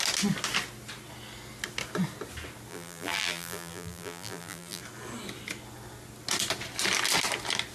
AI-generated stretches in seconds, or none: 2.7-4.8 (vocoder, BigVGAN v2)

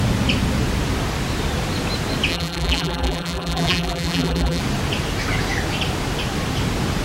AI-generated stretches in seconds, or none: 2.3-4.6 (vocoder, BigVGAN v2)

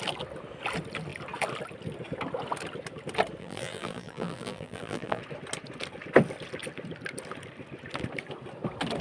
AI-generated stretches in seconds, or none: 3.4-5.2 (vocoder, BigVGAN v2)